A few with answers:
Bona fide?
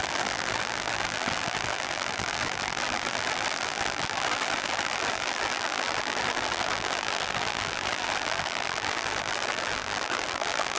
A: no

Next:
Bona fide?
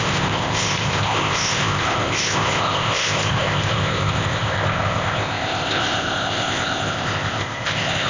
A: no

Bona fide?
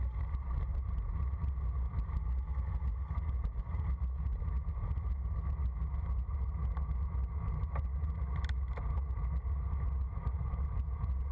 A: yes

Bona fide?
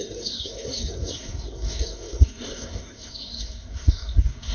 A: no